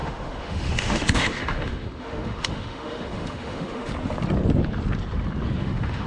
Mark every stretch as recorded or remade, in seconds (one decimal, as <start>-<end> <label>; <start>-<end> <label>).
0.0-3.9 remade; 3.9-5.6 recorded; 5.6-6.1 remade